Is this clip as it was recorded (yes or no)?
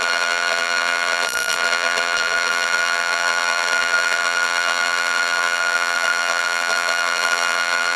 no